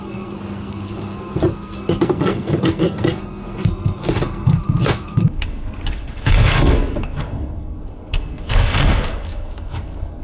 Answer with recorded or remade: remade